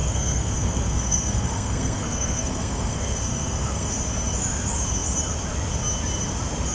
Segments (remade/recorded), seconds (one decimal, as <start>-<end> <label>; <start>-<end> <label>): 0.0-3.9 remade; 3.9-6.7 recorded